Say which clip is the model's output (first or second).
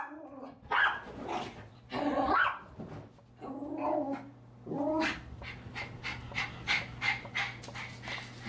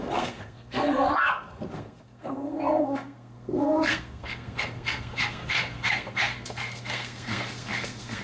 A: second